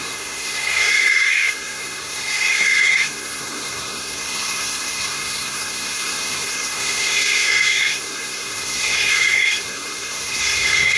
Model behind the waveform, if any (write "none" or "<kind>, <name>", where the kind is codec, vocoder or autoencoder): codec, SNAC